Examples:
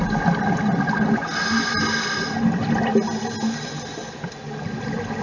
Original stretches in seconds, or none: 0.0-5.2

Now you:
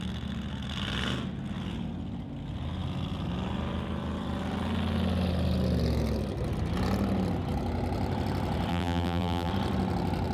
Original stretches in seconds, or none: 0.0-8.7; 9.5-10.3

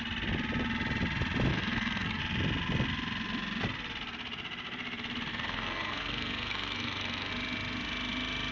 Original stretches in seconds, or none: 0.0-1.5; 2.2-5.3; 7.3-8.5

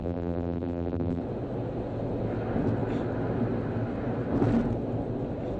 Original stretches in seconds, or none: 1.2-5.6